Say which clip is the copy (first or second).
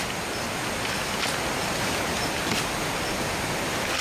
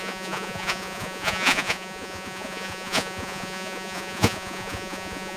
second